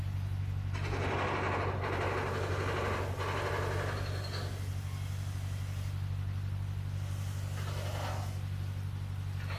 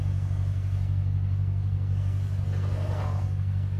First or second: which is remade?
second